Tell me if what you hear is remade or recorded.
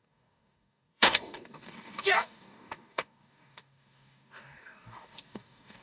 remade